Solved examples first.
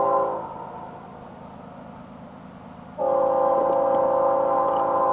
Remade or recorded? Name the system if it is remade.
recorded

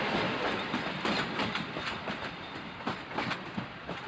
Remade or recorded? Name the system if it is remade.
recorded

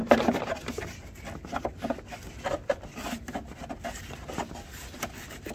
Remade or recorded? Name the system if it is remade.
recorded